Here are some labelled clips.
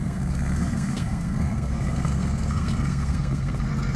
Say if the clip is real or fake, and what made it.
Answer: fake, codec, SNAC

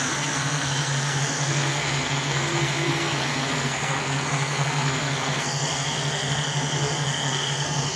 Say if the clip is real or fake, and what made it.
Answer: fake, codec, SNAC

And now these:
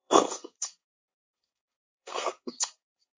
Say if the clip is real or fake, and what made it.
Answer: fake, codec, SNAC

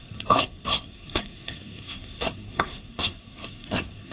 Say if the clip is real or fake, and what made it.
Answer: fake, codec, SNAC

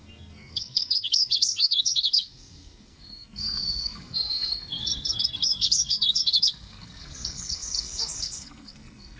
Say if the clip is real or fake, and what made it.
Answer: fake, codec, SNAC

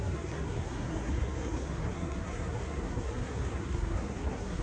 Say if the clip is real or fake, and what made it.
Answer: fake, codec, SNAC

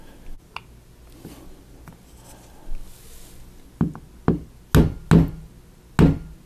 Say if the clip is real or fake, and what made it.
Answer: real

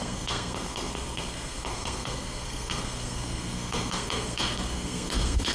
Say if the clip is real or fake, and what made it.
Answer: fake, codec, SNAC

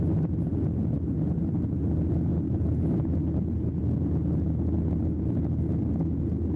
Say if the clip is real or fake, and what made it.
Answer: real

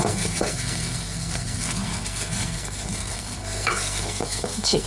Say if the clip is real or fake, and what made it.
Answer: fake, codec, SNAC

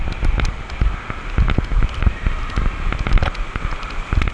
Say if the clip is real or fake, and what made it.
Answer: real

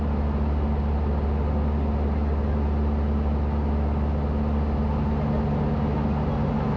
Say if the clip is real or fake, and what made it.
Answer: real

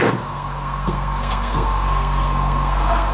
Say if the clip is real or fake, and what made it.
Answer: fake, codec, SNAC